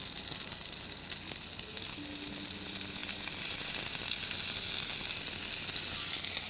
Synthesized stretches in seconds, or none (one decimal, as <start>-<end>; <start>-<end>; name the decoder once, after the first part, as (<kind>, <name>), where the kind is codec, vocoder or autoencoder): none